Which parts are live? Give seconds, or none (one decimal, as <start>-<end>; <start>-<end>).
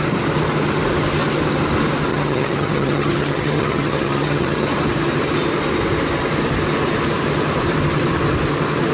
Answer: 0.0-2.1; 4.7-8.9